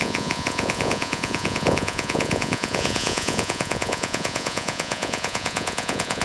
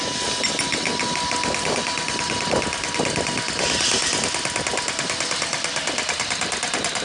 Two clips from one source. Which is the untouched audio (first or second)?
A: second